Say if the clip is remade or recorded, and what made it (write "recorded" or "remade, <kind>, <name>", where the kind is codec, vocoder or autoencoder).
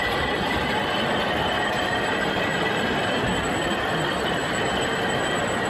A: recorded